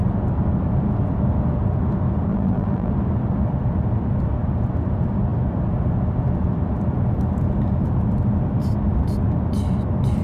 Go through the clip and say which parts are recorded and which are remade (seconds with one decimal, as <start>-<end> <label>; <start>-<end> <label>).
0.0-2.3 recorded; 2.3-2.9 remade; 2.9-10.2 recorded